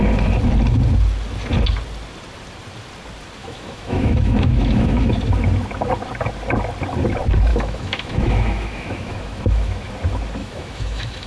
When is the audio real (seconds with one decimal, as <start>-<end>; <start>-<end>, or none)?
0.0-3.4; 5.1-7.5; 9.9-10.4

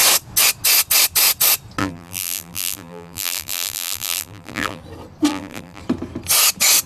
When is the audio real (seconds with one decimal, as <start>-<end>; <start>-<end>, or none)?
0.0-1.8; 4.8-5.3; 5.8-6.9

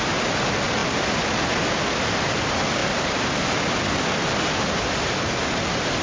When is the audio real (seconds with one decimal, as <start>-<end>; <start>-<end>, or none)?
0.0-2.8; 4.2-6.0

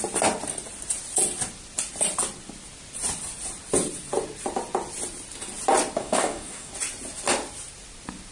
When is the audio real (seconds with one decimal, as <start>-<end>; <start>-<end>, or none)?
0.0-6.0; 6.7-8.3